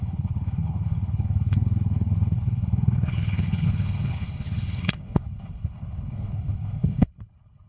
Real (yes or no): no